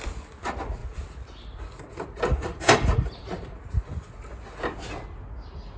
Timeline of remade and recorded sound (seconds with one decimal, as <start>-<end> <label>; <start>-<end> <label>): 0.0-2.3 recorded; 2.3-3.6 remade; 3.6-5.8 recorded

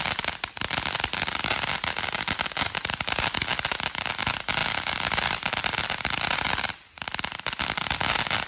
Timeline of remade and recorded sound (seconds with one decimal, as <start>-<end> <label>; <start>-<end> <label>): 0.0-8.5 recorded

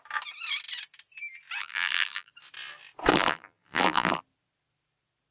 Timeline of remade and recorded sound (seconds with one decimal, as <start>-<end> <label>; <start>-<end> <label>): 0.0-1.6 recorded; 1.6-2.3 remade; 2.3-3.1 recorded; 3.1-4.2 remade; 4.2-5.3 recorded

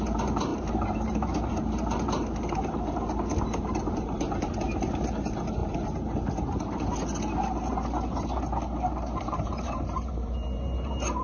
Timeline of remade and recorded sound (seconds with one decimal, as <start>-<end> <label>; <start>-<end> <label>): 0.0-5.6 remade; 5.6-9.2 recorded; 9.2-11.2 remade